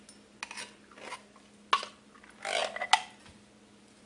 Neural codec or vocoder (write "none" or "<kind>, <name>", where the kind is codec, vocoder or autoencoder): none